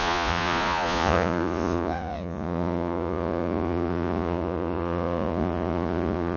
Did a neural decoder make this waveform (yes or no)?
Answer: yes